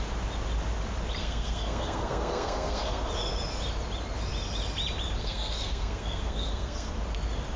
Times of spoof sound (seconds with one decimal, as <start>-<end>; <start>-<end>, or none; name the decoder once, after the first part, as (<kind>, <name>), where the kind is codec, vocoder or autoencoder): 1.2-3.1 (codec, SNAC); 5.2-6.9